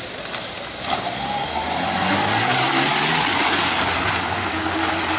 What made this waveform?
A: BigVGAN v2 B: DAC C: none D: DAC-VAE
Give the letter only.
C